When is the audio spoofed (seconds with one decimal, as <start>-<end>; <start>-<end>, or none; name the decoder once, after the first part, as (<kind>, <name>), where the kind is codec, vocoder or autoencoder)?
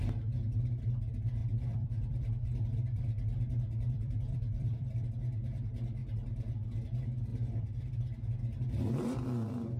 1.4-5.1 (vocoder, BigVGAN v2); 7.3-7.9